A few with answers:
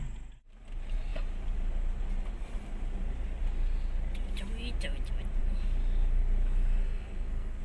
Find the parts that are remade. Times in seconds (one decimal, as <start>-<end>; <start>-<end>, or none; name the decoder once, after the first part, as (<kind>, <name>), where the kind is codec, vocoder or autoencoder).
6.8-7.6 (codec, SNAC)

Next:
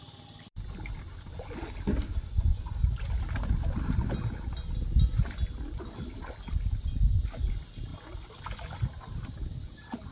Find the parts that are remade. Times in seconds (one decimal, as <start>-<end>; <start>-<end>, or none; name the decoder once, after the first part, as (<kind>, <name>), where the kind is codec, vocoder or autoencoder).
none

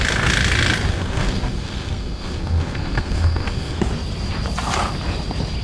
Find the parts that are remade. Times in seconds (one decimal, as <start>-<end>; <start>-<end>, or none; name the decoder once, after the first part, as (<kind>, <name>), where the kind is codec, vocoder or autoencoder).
0.9-3.8 (codec, SNAC)

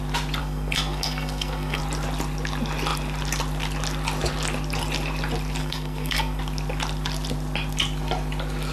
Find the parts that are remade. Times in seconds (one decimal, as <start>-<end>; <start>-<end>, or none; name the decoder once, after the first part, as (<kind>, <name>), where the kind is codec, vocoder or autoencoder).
0.4-1.8 (codec, SNAC); 5.6-6.4

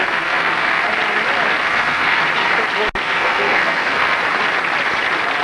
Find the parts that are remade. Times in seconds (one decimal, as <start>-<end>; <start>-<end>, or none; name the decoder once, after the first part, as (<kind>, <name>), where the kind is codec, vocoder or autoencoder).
0.0-0.8 (codec, SNAC); 1.6-2.2; 3.0-4.2